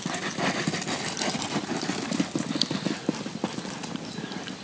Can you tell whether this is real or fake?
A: real